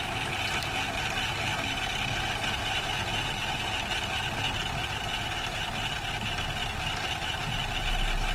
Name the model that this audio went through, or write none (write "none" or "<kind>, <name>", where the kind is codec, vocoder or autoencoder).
none